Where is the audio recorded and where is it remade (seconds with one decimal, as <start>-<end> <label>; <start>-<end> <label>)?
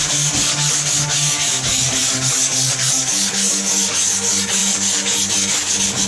0.0-6.1 remade